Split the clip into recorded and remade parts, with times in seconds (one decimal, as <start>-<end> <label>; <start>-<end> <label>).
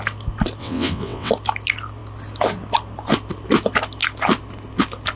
0.0-0.6 recorded; 0.6-1.3 remade; 1.3-5.2 recorded